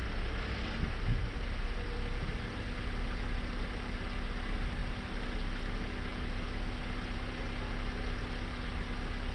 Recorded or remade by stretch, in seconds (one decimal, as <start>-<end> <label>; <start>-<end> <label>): 0.0-9.3 recorded